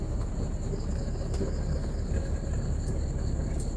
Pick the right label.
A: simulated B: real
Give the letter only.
B